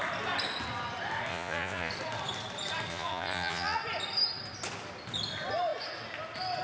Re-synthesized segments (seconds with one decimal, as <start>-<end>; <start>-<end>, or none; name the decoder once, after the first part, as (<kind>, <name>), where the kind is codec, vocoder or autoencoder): 1.3-1.9 (vocoder, Vocos); 2.9-3.8